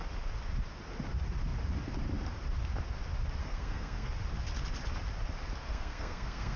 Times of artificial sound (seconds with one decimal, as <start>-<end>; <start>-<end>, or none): 3.4-4.1; 5.7-6.6